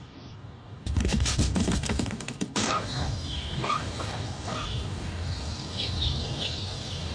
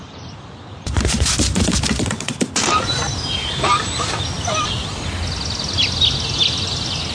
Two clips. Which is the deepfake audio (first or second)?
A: first